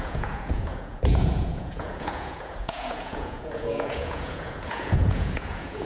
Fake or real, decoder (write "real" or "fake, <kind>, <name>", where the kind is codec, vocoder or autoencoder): fake, vocoder, Vocos